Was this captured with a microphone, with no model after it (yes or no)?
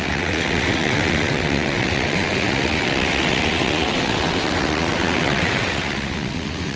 no